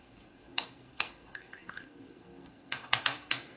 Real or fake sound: fake